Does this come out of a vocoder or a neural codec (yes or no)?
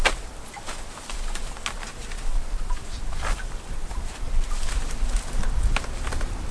no